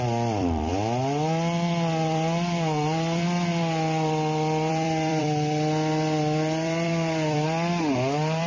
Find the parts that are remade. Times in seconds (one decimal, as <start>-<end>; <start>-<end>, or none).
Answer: 0.0-8.5